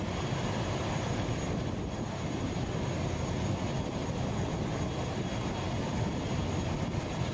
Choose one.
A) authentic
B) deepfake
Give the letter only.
A